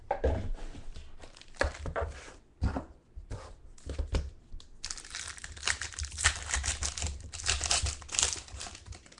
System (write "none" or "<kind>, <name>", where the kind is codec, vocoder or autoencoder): none